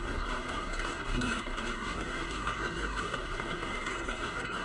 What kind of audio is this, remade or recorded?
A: remade